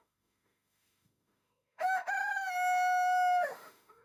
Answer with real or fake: fake